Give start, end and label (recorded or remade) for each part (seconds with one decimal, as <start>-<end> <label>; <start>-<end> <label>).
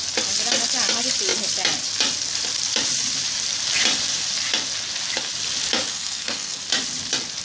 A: 0.0-5.9 recorded; 5.9-6.6 remade; 6.6-7.4 recorded